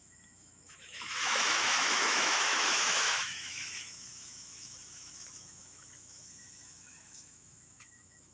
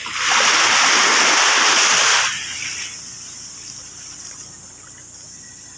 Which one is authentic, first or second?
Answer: second